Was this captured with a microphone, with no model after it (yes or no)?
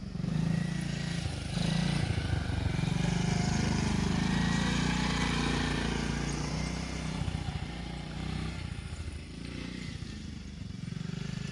no